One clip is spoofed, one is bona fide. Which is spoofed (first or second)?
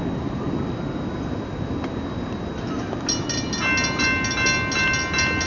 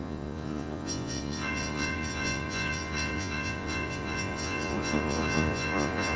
second